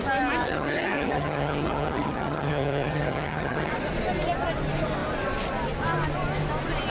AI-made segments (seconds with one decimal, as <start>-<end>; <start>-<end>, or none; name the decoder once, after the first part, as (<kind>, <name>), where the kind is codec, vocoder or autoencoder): 0.4-3.7 (vocoder, HiFi-GAN)